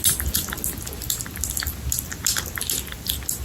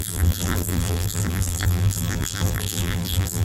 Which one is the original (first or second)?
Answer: first